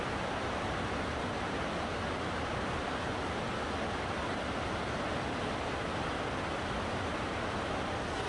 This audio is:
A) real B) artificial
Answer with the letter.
A